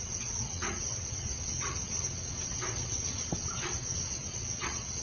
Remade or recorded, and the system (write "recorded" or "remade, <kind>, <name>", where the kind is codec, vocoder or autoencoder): remade, vocoder, WaveNeXt